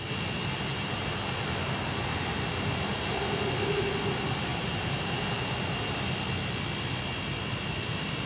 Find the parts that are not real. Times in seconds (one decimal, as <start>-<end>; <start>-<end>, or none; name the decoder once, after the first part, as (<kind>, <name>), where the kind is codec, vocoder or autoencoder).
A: 0.7-1.3 (vocoder, BigVGAN v2); 2.9-3.4; 4.5-5.2